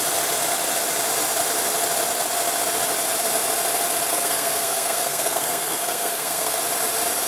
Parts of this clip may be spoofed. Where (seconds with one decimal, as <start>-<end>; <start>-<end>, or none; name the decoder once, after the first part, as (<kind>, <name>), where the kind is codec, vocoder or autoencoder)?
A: 4.1-6.6 (codec, SNAC)